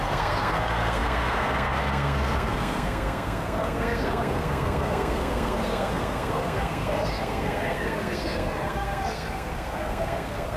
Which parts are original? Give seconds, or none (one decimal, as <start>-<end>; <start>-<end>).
none